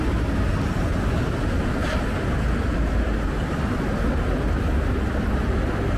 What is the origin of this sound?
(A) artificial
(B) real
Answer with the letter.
B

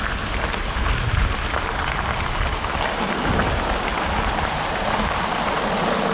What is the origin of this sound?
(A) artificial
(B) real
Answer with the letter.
B